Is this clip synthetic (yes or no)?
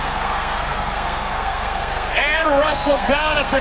yes